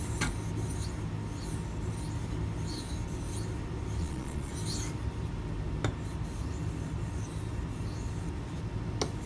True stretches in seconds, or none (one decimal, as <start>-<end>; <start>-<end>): 0.0-4.0; 4.5-9.3